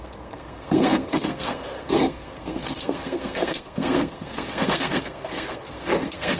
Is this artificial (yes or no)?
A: yes